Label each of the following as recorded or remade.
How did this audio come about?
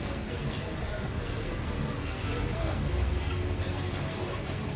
remade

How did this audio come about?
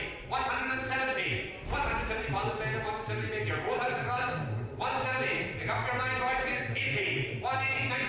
recorded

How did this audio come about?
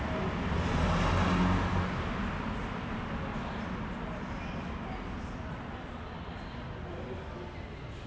recorded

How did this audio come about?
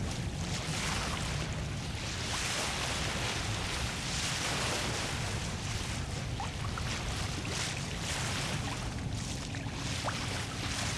recorded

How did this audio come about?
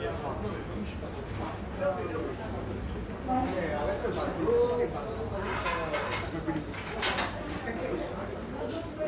recorded